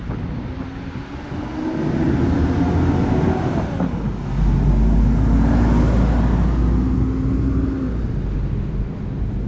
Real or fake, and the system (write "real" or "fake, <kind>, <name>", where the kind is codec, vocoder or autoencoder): real